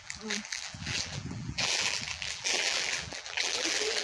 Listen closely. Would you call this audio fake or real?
fake